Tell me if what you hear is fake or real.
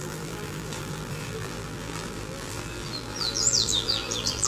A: fake